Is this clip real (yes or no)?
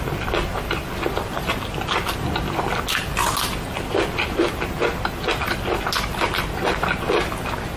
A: yes